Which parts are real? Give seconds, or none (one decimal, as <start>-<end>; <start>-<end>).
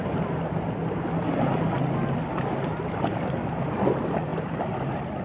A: 0.0-2.7; 3.9-4.3